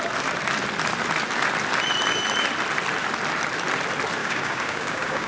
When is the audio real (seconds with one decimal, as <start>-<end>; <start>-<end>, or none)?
0.0-4.2